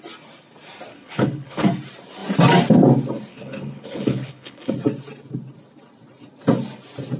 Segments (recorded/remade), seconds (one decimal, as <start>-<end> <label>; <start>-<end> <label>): 0.0-0.9 recorded; 0.9-1.6 remade; 1.6-3.3 recorded; 3.3-4.7 remade; 4.7-7.2 recorded